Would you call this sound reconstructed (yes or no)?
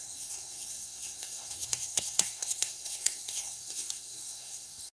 yes